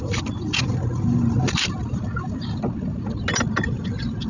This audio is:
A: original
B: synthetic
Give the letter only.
A